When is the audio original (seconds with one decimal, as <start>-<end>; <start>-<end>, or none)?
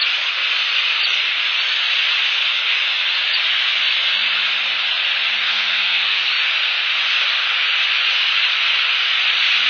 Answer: 0.0-5.5; 6.3-9.7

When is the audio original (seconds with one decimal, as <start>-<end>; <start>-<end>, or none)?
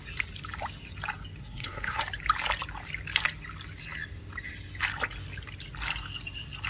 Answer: 0.0-1.4; 2.0-6.7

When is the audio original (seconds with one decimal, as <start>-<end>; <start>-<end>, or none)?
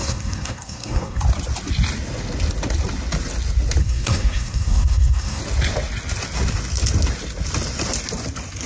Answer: 1.2-3.8; 5.4-8.7